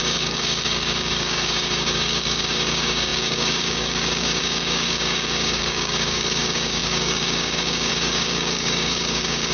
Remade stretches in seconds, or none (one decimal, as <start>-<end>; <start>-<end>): 0.0-9.5